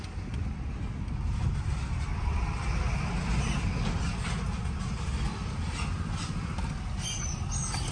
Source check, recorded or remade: recorded